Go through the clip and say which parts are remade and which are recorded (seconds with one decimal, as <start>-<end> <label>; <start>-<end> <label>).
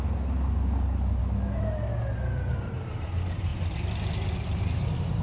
0.0-1.2 recorded; 1.2-1.7 remade; 1.7-5.2 recorded